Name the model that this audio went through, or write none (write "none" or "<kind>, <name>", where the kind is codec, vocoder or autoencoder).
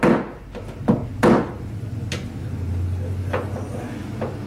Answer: none